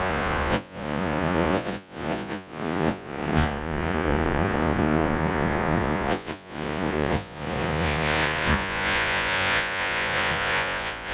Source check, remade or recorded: remade